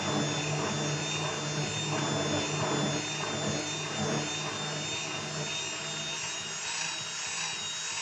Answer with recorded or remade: recorded